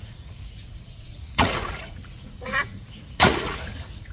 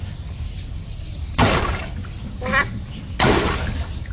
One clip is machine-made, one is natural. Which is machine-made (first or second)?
first